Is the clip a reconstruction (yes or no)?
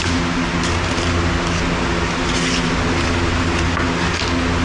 no